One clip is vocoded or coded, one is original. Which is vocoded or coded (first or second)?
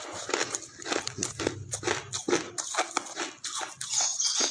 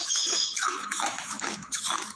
second